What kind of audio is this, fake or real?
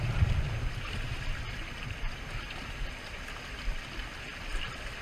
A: real